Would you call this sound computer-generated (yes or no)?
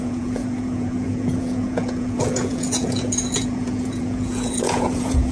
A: yes